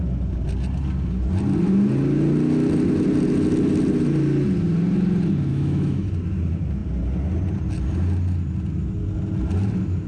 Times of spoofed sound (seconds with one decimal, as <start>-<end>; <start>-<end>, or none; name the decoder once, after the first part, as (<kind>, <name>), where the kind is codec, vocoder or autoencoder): 5.5-6.1 (autoencoder, DAC-VAE)